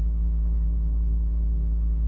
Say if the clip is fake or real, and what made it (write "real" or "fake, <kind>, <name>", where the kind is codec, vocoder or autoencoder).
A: fake, codec, HILCodec